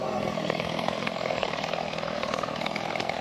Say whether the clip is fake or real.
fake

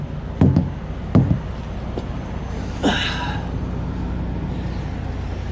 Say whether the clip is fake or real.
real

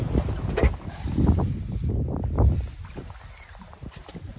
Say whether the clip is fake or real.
real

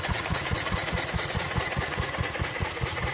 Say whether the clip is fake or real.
fake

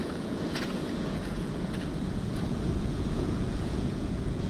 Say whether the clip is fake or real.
fake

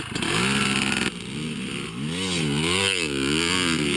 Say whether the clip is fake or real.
real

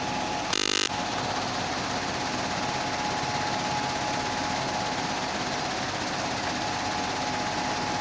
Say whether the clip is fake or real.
real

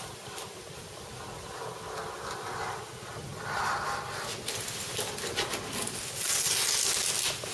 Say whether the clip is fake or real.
real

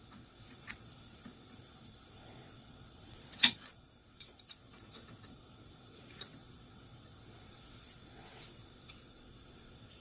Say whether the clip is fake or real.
fake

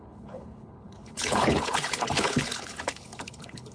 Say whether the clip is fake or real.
fake